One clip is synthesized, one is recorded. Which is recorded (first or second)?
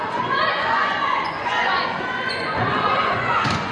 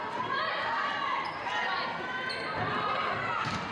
second